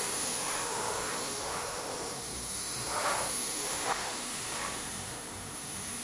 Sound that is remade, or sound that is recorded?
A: remade